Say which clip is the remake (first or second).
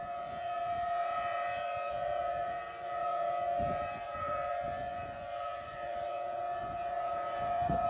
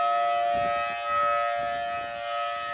first